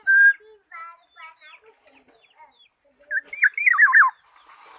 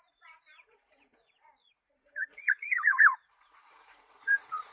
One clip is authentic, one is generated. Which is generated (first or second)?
second